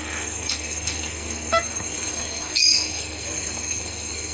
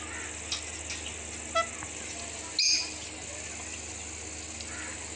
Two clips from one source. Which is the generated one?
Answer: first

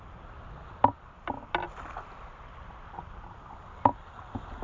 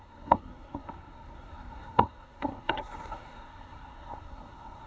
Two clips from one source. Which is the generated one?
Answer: second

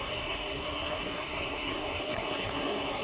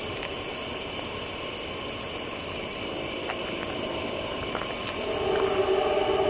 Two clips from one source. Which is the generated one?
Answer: first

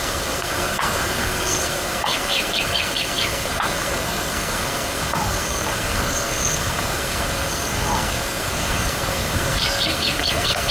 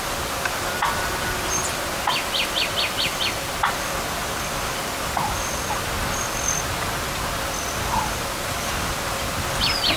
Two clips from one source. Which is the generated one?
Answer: first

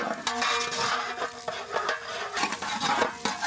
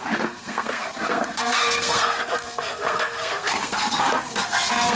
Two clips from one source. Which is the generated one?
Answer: second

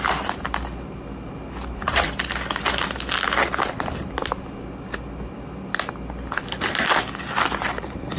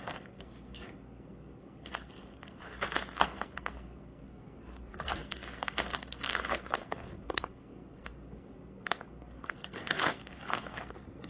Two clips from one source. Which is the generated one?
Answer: second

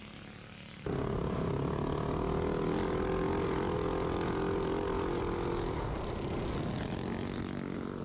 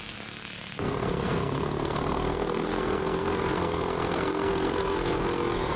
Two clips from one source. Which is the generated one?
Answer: second